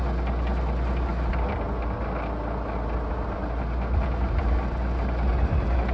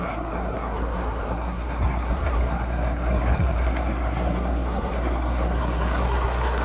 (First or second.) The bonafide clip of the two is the first